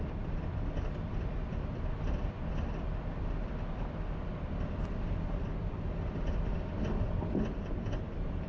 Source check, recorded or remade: remade